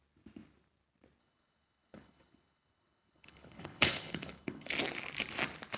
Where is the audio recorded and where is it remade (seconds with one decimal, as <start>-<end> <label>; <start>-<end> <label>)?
0.0-1.2 recorded; 1.2-4.7 remade; 4.7-5.8 recorded